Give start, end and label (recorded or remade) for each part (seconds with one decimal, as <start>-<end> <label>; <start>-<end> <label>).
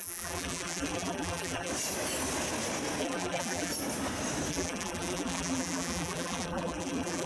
0.0-1.7 remade; 1.7-3.0 recorded; 3.0-3.7 remade; 3.7-4.5 recorded; 4.5-7.3 remade